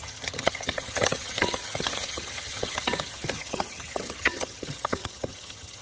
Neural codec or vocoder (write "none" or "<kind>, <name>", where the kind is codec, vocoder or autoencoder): vocoder, HiFi-GAN